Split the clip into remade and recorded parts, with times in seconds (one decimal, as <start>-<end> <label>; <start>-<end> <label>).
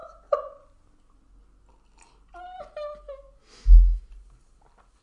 0.0-3.4 recorded; 3.4-4.0 remade; 4.0-5.0 recorded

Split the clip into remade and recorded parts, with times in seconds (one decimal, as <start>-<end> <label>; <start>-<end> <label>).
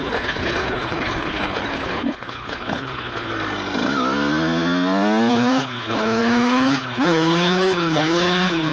0.0-3.3 remade; 3.3-5.3 recorded; 5.3-8.7 remade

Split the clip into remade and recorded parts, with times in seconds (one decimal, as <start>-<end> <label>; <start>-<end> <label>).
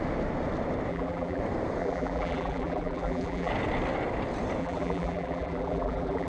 0.0-0.9 recorded; 0.9-1.4 remade; 1.4-1.8 recorded; 1.8-3.5 remade; 3.5-4.6 recorded; 4.6-6.3 remade